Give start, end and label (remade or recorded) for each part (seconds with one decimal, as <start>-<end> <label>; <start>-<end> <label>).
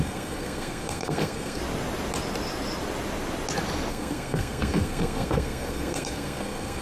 0.0-1.6 remade; 1.6-3.9 recorded; 3.9-6.8 remade